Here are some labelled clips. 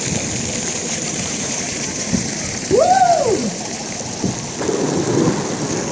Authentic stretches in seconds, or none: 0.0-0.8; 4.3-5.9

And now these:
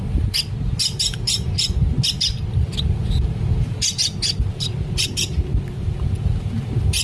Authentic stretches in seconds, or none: 0.0-7.0

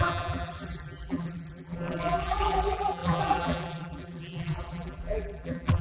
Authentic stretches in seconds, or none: none